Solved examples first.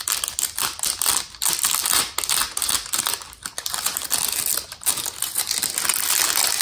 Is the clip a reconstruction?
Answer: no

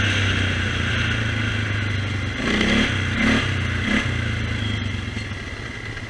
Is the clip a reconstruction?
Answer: no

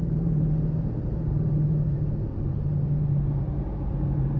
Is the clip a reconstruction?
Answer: yes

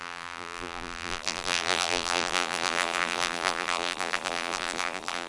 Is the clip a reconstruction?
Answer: yes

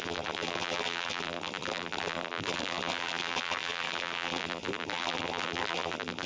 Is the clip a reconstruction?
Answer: yes